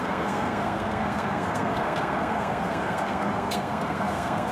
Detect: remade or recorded remade